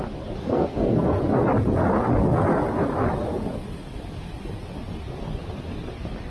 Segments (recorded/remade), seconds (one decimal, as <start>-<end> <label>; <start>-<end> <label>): 0.0-0.4 recorded; 0.4-1.2 remade; 1.2-6.3 recorded